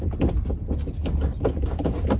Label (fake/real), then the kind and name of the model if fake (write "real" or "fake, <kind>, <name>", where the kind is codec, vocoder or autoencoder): real